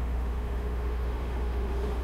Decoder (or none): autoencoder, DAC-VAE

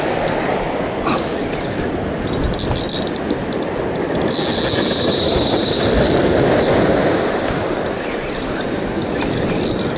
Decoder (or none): none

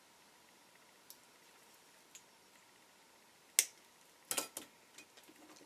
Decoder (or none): none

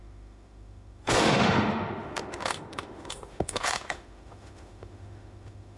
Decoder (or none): autoencoder, DAC-VAE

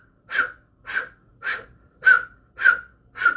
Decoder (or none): none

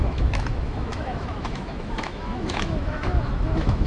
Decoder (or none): autoencoder, DAC-VAE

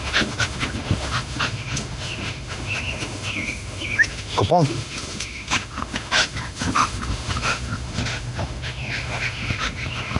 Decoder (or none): autoencoder, DAC-VAE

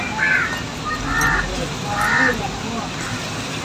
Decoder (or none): none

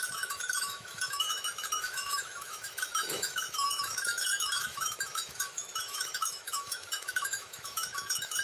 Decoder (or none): autoencoder, DAC-VAE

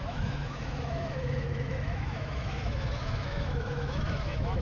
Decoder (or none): autoencoder, DAC-VAE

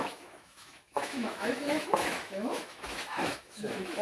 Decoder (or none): autoencoder, DAC-VAE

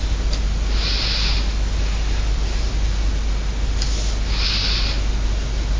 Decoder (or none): none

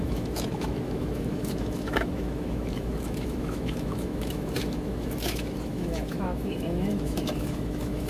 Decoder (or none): autoencoder, DAC-VAE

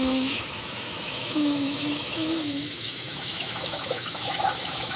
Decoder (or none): autoencoder, DAC-VAE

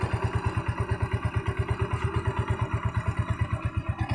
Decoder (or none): none